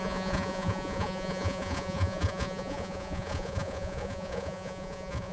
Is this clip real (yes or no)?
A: no